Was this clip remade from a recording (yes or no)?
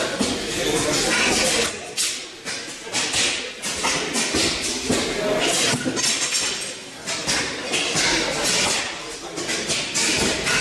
no